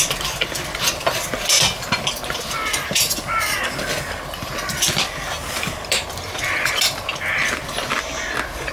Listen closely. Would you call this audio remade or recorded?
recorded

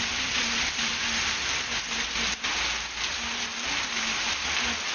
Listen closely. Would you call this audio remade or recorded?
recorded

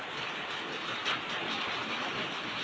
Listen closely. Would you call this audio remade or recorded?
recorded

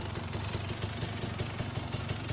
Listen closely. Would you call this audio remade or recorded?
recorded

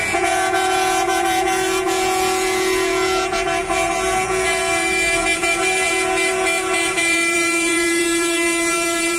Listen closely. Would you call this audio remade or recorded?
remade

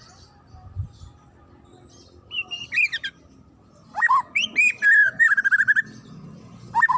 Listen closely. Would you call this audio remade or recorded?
remade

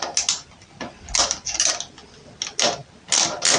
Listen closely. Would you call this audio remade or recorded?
recorded